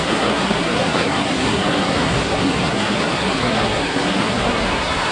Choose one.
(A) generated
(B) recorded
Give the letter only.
A